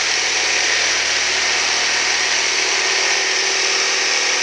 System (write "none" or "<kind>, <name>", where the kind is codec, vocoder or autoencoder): vocoder, BigVGAN v2